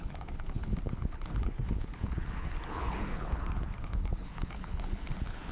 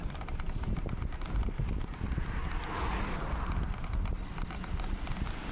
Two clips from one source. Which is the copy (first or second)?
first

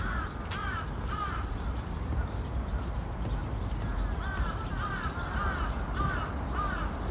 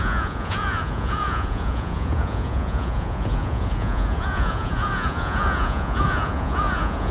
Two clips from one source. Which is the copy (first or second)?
second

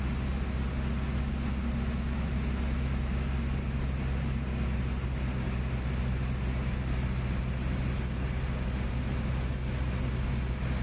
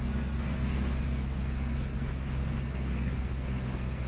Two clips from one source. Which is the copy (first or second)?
second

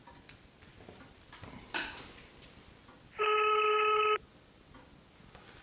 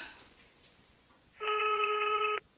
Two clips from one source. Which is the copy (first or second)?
second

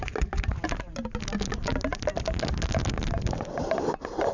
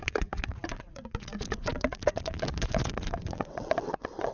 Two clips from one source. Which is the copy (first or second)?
second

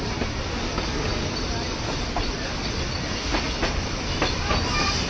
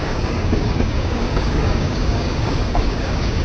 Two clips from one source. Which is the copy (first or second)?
second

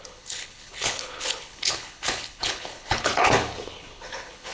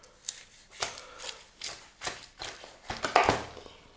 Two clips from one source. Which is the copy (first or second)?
first